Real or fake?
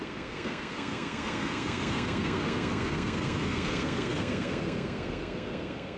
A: fake